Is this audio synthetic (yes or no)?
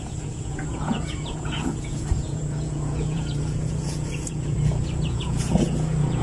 yes